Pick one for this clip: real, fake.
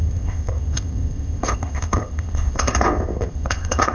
fake